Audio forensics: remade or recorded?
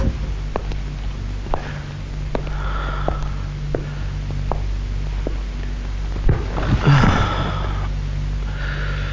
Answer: recorded